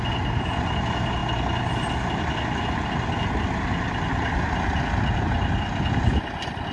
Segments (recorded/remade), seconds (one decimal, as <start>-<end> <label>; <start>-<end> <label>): 0.0-6.7 recorded